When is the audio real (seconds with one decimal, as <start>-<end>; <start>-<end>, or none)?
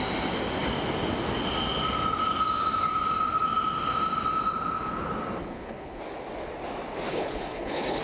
0.0-5.4; 6.0-7.1